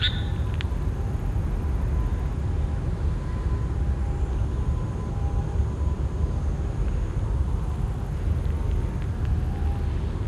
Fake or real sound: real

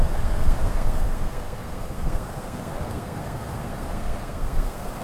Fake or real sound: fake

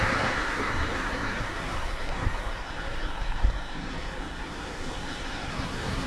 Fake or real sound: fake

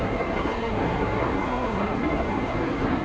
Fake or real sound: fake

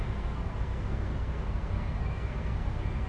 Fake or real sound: fake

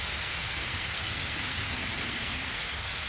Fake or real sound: fake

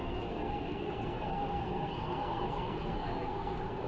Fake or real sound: fake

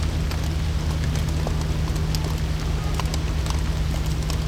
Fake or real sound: real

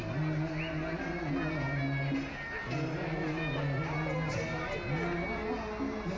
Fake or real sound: real